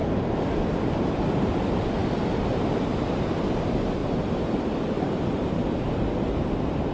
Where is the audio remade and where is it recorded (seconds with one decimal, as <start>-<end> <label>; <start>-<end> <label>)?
0.0-0.6 remade; 0.6-4.0 recorded; 4.0-6.1 remade; 6.1-6.9 recorded